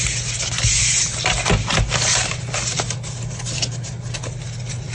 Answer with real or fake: real